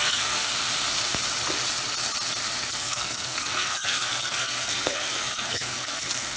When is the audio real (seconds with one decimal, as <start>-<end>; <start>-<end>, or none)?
0.5-2.6